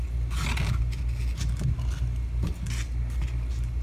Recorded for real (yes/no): yes